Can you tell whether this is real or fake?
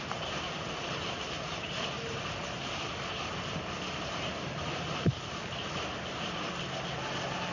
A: real